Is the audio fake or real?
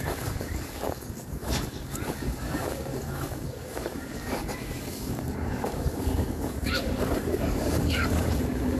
fake